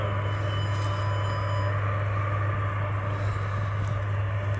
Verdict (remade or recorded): recorded